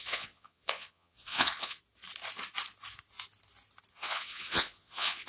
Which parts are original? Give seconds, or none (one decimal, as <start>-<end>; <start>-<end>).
1.8-3.9